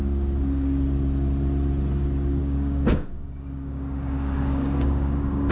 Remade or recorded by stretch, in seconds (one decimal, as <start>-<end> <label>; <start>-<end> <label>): 0.0-2.4 recorded; 2.4-5.5 remade